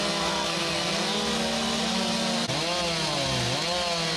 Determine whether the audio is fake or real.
real